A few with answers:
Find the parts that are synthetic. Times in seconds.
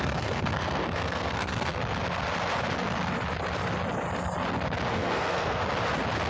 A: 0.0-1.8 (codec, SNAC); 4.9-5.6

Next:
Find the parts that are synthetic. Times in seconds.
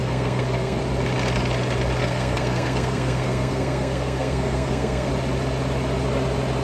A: 0.0-0.8 (codec, SNAC); 2.0-5.1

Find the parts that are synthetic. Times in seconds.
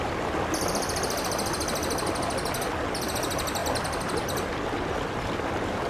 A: none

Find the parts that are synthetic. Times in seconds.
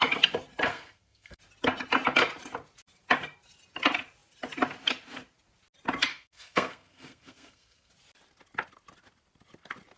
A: 0.7-1.4 (codec, SNAC); 6.1-7.9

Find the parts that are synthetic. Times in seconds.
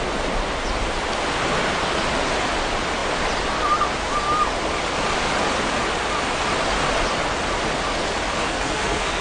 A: 8.3-9.2 (codec, SNAC)